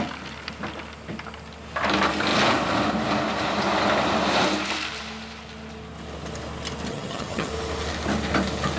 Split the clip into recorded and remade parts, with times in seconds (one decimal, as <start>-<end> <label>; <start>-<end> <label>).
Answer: 0.0-6.9 recorded; 6.9-7.5 remade; 7.5-8.8 recorded

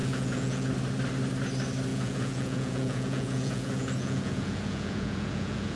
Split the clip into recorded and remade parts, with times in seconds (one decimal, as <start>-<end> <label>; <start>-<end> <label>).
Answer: 0.0-0.7 remade; 0.7-1.9 recorded; 1.9-5.8 remade

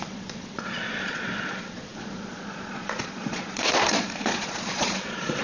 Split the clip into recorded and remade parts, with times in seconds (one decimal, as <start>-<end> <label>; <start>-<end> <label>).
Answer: 0.0-5.4 remade

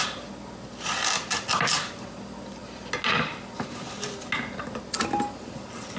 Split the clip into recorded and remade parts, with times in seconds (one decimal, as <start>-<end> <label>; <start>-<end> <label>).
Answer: 0.0-6.0 recorded

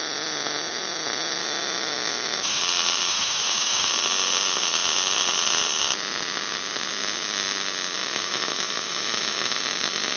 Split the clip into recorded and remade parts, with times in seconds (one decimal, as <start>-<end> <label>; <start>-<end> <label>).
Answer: 0.0-1.4 recorded; 1.4-2.6 remade; 2.6-3.1 recorded; 3.1-3.9 remade; 3.9-8.0 recorded; 8.0-9.6 remade; 9.6-10.2 recorded

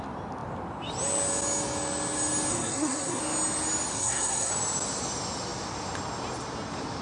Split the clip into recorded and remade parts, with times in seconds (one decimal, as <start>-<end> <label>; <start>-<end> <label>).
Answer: 0.0-2.5 recorded; 2.5-3.2 remade; 3.2-3.9 recorded; 3.9-4.5 remade; 4.5-7.0 recorded

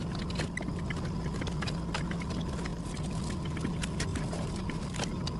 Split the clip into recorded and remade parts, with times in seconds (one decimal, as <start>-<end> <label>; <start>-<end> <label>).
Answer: 0.0-4.1 recorded; 4.1-4.8 remade; 4.8-5.4 recorded

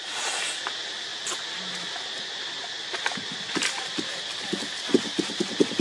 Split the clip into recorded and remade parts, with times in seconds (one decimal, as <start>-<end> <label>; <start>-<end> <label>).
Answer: 0.0-5.8 recorded